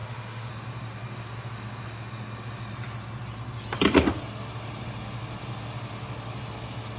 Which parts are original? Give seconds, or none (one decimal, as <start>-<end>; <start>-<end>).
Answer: 0.5-7.0